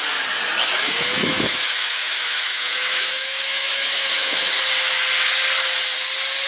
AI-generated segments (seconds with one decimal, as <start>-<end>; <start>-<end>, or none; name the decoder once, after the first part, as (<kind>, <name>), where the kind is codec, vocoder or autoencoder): 0.7-4.6 (autoencoder, DAC-VAE)